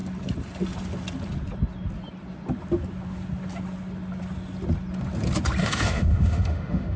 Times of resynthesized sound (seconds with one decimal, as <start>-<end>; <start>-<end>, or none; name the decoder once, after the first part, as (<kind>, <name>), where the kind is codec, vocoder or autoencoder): 5.6-7.0 (autoencoder, DAC-VAE)